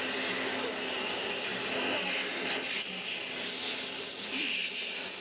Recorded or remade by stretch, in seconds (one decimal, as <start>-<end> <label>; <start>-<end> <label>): 0.0-5.2 recorded